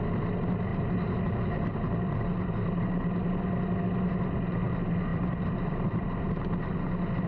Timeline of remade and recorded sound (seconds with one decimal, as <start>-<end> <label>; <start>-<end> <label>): 0.0-7.3 recorded